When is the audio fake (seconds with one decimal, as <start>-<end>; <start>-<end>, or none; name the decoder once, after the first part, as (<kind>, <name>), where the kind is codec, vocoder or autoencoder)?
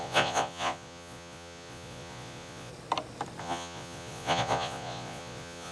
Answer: 0.0-2.7 (vocoder, Vocos); 3.4-5.7